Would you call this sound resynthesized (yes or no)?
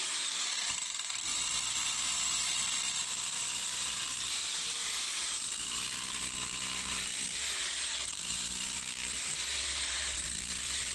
yes